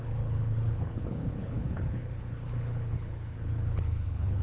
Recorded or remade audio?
remade